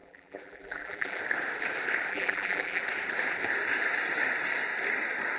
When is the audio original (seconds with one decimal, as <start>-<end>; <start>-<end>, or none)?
1.2-2.1; 2.8-5.4